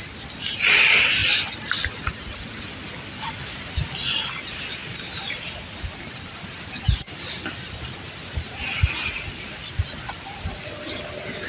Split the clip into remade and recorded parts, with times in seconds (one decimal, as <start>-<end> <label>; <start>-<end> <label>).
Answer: 0.0-11.5 recorded